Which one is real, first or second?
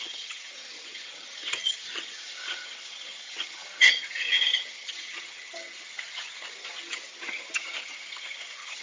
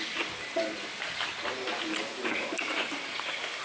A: second